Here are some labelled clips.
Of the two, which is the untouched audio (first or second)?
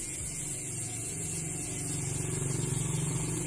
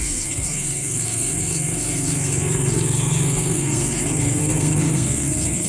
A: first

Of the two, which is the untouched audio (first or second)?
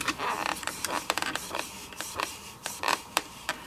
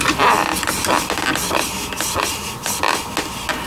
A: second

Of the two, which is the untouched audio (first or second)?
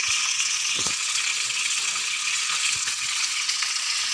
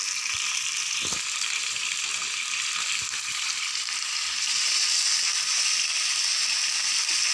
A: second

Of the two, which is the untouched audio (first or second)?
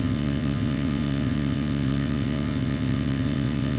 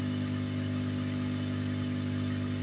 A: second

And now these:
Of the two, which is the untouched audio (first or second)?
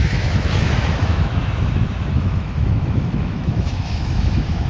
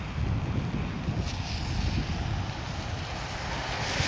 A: second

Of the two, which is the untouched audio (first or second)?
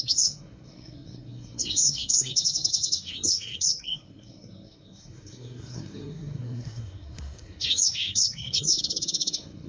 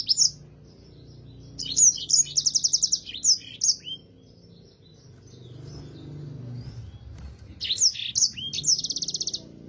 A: second